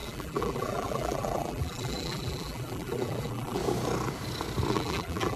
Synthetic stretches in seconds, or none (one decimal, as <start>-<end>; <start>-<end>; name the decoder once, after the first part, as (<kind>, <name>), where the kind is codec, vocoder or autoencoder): 0.0-3.6 (vocoder, BigVGAN v2); 4.7-5.4